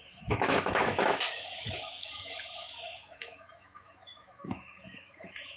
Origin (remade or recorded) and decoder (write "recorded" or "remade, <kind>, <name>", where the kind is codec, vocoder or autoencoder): remade, autoencoder, DAC-VAE